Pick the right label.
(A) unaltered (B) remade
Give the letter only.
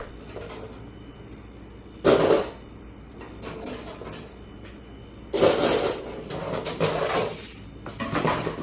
A